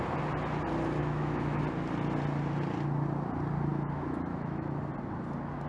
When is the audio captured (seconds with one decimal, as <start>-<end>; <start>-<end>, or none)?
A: 0.0-1.0; 1.6-3.7; 4.7-5.7